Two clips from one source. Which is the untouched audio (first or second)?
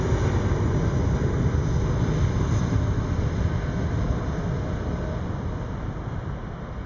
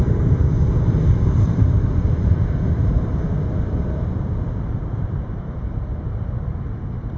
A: first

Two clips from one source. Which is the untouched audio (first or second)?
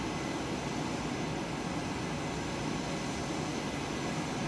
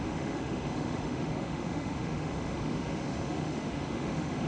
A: first